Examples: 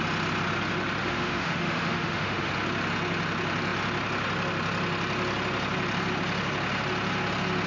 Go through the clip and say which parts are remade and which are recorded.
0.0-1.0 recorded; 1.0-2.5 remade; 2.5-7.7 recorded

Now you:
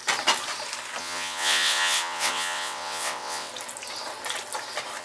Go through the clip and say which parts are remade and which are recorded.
0.0-1.0 recorded; 1.0-3.5 remade; 3.5-5.0 recorded

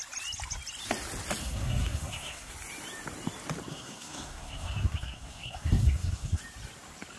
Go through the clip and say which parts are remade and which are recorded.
0.0-1.4 recorded; 1.4-2.5 remade; 2.5-3.7 recorded; 3.7-6.4 remade; 6.4-7.2 recorded

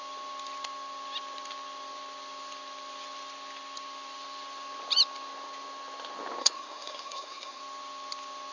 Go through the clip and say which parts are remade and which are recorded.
0.0-6.4 recorded; 6.4-7.6 remade; 7.6-8.5 recorded

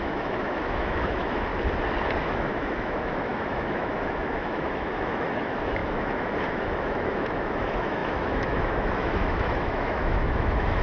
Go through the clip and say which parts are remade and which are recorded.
0.0-1.5 remade; 1.5-2.2 recorded; 2.2-10.8 remade

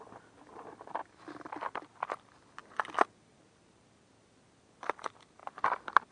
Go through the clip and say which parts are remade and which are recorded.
0.0-6.1 recorded